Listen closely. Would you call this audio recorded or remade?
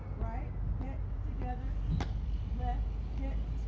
recorded